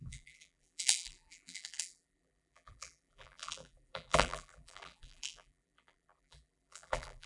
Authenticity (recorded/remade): remade